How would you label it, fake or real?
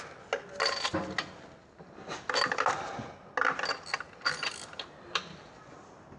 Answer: real